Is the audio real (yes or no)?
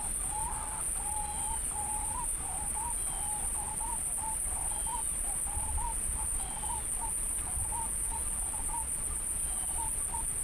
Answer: no